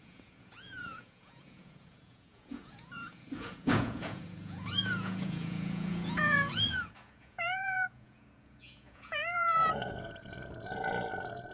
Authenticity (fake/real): fake